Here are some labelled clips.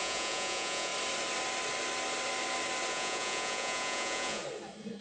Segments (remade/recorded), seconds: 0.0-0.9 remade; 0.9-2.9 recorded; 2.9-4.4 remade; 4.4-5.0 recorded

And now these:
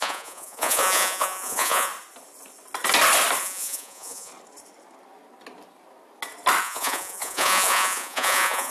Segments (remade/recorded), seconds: 0.0-1.9 remade; 1.9-3.4 recorded; 3.4-4.3 remade; 4.3-6.6 recorded; 6.6-8.7 remade

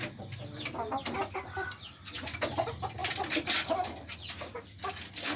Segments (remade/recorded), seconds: 0.0-5.4 recorded

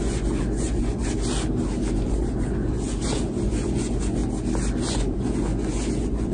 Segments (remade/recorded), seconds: 0.0-1.0 remade; 1.0-1.9 recorded; 1.9-4.2 remade; 4.2-4.9 recorded; 4.9-6.3 remade

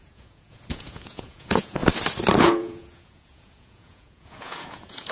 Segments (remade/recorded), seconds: 0.0-1.8 remade; 1.8-2.4 recorded; 2.4-5.1 remade

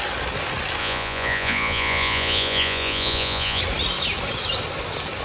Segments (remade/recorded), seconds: 0.0-0.8 recorded; 0.8-3.6 remade; 3.6-5.2 recorded

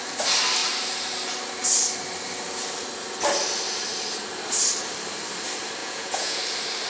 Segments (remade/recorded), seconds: 0.0-5.8 recorded; 5.8-6.4 remade; 6.4-6.9 recorded

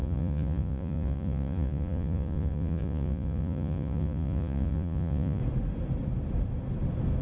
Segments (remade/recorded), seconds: 0.0-5.4 remade; 5.4-7.2 recorded